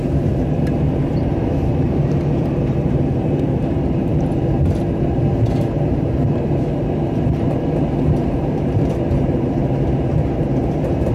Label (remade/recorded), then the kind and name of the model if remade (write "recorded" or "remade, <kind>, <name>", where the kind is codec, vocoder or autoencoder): remade, vocoder, BigVGAN v2